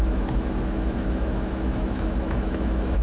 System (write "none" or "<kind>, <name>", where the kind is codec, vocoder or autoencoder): autoencoder, DAC-VAE